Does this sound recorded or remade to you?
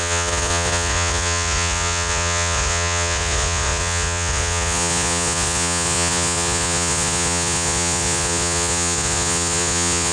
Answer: remade